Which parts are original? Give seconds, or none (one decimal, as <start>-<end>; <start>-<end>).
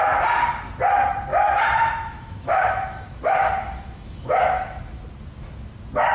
0.0-1.3; 5.0-6.1